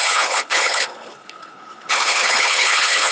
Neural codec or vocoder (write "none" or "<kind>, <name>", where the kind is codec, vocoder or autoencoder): codec, HILCodec